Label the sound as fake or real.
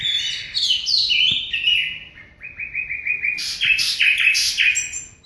real